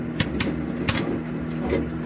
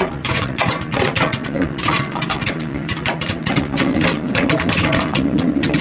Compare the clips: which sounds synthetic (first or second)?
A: second